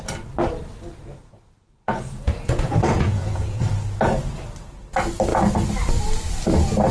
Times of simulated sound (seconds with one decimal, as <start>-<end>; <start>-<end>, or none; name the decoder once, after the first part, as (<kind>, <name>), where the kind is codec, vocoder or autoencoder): 1.0-3.7 (vocoder, Vocos)

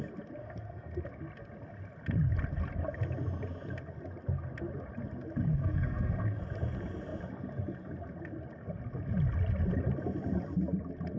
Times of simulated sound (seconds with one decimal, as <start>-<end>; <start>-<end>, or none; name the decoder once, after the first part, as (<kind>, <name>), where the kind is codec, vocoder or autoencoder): 0.4-1.0 (codec, SNAC); 5.5-6.4

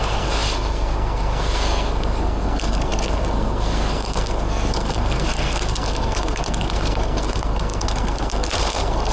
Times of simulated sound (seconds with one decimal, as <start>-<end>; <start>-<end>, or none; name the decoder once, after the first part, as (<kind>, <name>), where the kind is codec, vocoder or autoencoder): 0.0-9.1 (codec, SNAC)

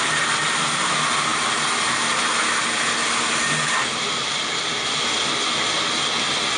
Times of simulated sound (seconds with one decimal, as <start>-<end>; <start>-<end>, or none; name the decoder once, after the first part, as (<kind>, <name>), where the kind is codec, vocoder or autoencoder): 1.3-4.4 (vocoder, BigVGAN v2)

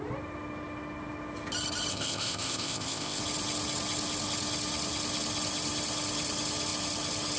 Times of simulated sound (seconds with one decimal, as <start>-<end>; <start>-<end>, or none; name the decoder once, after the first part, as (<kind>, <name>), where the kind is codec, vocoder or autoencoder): 1.9-3.2 (codec, ZipCodec)

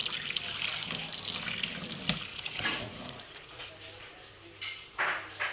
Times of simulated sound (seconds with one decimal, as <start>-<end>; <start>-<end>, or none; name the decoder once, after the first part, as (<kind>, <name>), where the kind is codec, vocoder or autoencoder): 2.3-3.7 (vocoder, Vocos)

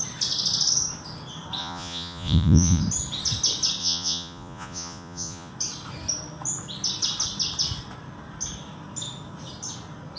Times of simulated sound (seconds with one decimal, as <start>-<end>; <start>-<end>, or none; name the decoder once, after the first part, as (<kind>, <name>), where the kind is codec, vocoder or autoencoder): 1.6-2.8 (vocoder, Vocos); 3.8-5.5